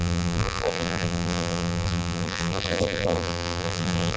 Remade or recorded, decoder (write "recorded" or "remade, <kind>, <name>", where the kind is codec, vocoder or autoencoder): remade, vocoder, BigVGAN v2